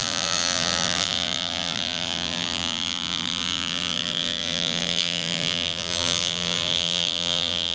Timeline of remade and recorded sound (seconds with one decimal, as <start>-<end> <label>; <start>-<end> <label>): 0.0-7.7 remade